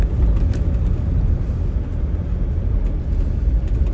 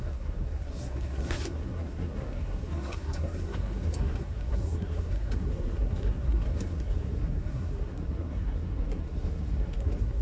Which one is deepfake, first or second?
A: second